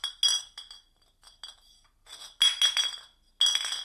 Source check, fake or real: real